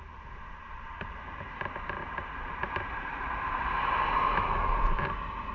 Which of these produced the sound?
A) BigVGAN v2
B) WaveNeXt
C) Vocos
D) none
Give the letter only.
D